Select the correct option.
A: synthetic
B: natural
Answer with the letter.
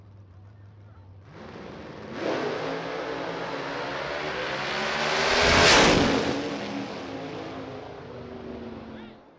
B